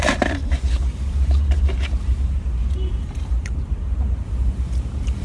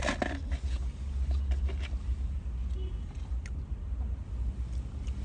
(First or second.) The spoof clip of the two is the first